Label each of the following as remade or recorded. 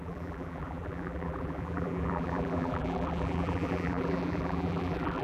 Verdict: remade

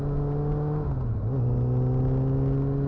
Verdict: recorded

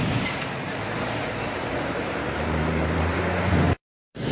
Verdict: remade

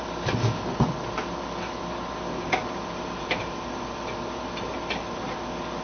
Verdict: recorded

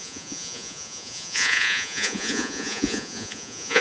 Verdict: remade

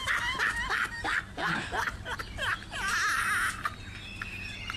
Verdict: recorded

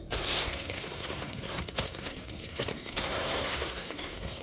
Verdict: remade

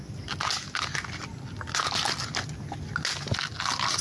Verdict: recorded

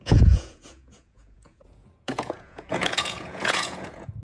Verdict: remade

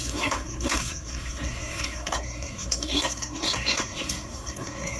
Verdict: remade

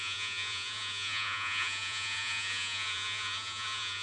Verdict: remade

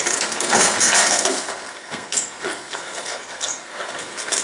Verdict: remade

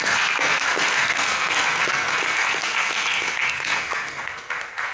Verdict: remade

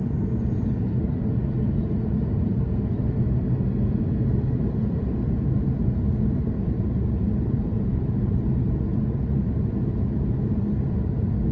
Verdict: recorded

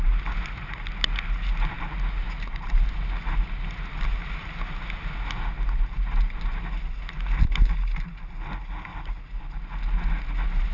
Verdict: recorded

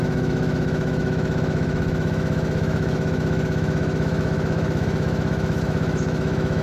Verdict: remade